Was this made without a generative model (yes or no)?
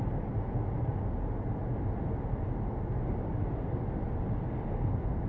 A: yes